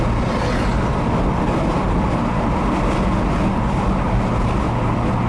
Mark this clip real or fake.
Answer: real